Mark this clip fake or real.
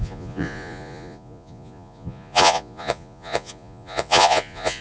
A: fake